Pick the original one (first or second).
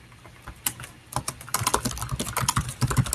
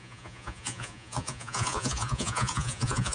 first